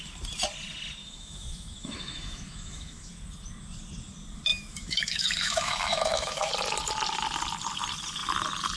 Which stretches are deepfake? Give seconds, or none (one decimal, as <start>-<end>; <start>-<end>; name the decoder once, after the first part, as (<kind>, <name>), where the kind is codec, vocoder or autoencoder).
1.0-3.1 (autoencoder, DAC-VAE); 4.5-6.5